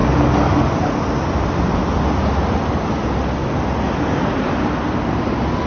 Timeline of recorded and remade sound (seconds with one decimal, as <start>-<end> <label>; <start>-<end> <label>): 0.0-5.7 recorded